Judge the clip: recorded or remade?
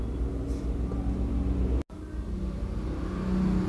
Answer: recorded